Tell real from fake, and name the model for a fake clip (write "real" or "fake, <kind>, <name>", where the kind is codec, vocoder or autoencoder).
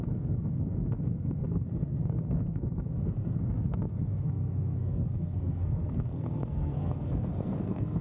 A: fake, codec, SNAC